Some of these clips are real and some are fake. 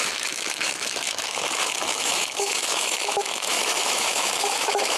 fake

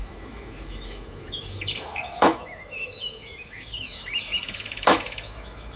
fake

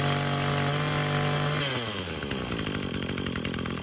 real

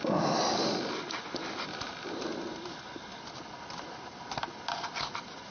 real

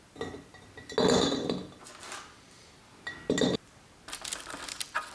real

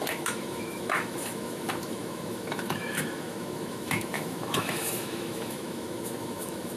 fake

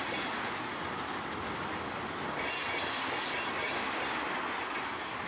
real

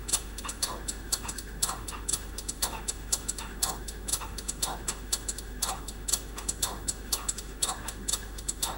fake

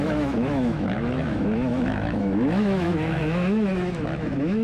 fake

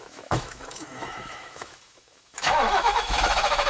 fake